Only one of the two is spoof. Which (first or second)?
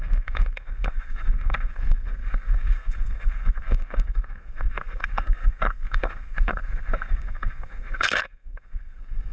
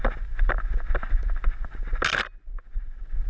first